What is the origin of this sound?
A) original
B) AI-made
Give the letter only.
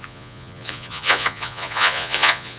B